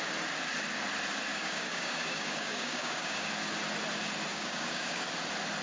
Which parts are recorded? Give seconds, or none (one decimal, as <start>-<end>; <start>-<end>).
0.0-1.3; 3.3-4.3; 5.1-5.6